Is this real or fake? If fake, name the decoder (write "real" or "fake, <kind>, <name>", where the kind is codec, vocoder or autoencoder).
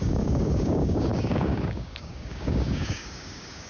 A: fake, codec, DAC